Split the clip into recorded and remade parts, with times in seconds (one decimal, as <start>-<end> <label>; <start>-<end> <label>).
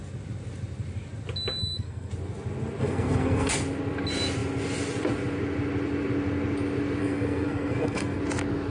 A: 0.0-1.6 recorded; 1.6-2.1 remade; 2.1-2.8 recorded; 2.8-3.5 remade; 3.5-7.0 recorded; 7.0-8.2 remade; 8.2-8.7 recorded